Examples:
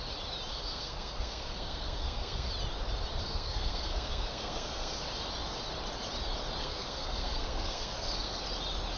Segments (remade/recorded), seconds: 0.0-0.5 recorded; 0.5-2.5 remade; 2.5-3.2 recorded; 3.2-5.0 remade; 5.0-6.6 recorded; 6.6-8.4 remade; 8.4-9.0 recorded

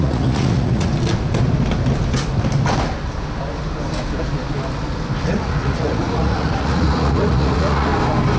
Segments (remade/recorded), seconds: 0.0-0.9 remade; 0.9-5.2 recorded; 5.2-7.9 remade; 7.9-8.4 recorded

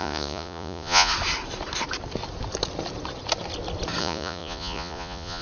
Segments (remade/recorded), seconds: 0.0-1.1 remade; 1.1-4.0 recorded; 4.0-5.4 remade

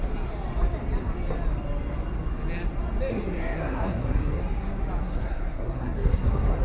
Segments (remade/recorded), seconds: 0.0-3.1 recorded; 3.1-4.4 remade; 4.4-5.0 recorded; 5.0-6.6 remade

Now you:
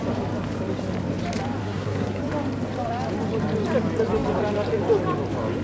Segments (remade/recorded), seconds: 0.0-1.6 recorded; 1.6-2.2 remade; 2.2-5.6 recorded

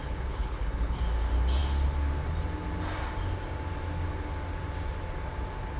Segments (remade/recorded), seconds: 0.0-1.0 remade; 1.0-5.8 recorded

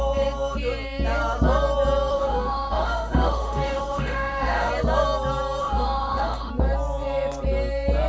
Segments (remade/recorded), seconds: 0.0-2.1 recorded; 2.1-4.7 remade; 4.7-5.6 recorded; 5.6-6.5 remade; 6.5-8.1 recorded